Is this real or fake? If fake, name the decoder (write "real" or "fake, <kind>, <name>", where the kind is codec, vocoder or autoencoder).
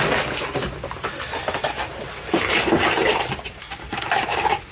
real